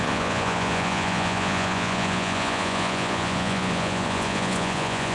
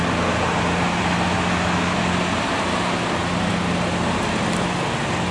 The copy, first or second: first